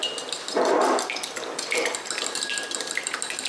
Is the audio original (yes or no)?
yes